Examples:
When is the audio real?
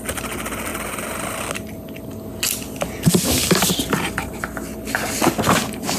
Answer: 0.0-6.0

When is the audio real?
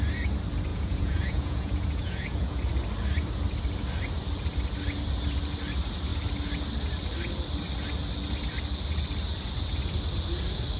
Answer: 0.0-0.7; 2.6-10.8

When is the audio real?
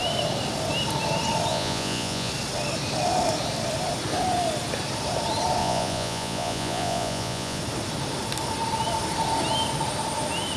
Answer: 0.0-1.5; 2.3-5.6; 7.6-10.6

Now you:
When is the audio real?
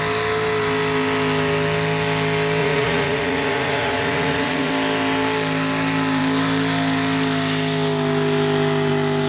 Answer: 0.0-2.6; 4.7-9.3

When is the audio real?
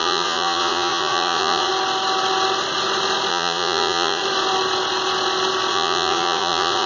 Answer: 1.7-3.3; 4.2-5.7